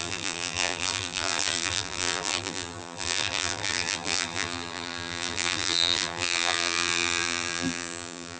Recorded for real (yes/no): no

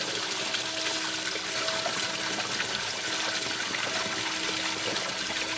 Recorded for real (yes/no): yes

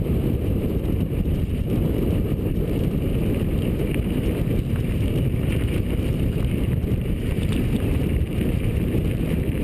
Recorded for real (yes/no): no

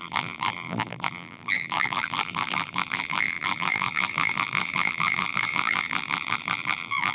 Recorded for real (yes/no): no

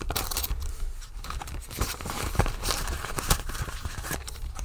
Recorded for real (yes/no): no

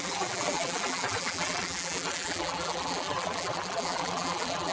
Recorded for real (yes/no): no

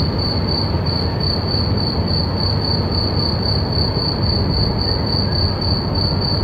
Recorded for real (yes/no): yes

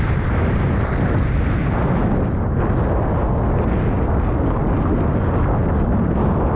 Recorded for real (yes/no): yes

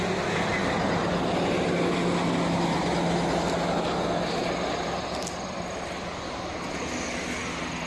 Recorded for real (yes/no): yes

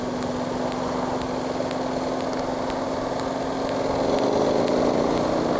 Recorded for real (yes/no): yes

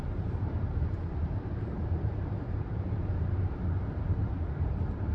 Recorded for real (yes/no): no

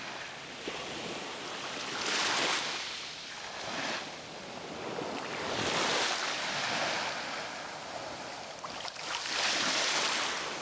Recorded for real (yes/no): yes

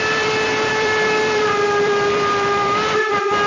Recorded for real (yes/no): no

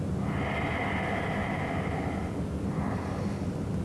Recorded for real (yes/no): yes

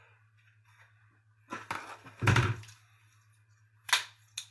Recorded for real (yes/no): yes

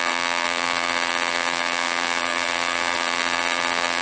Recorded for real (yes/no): no